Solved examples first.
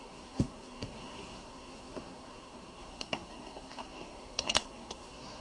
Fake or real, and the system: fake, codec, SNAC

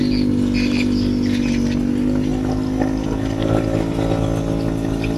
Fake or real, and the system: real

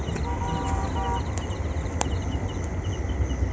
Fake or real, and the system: real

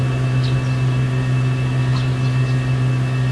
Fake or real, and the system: real